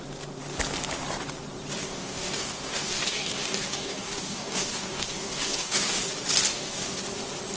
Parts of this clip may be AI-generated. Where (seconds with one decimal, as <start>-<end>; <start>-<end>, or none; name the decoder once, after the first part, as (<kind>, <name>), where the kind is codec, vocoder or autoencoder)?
1.8-6.0 (codec, DAC); 6.5-7.0